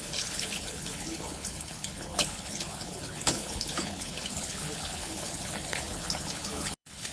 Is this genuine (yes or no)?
no